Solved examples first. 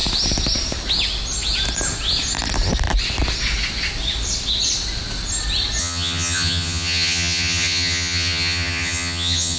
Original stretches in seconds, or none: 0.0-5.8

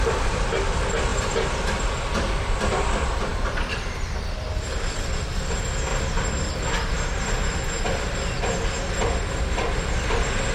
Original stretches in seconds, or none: 5.9-9.8

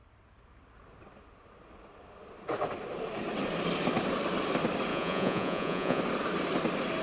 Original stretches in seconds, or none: 0.0-4.9; 6.0-7.0

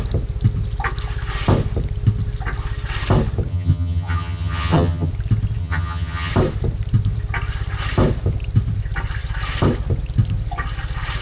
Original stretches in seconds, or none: 0.0-3.5; 5.1-5.6; 6.3-11.2

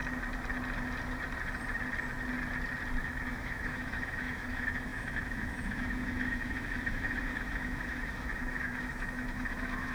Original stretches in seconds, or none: 0.0-3.0

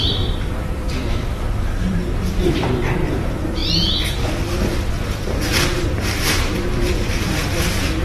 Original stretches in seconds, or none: 3.6-4.9

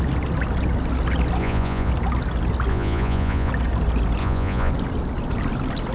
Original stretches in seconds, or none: 0.0-1.4; 1.9-2.7; 3.5-4.2; 4.7-5.9

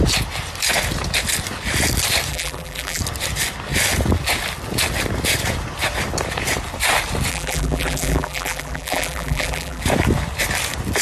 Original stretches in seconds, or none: 0.0-2.3; 3.0-7.3; 9.8-11.0